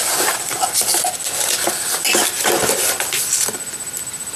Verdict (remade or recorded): recorded